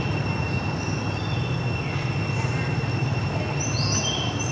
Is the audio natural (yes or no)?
yes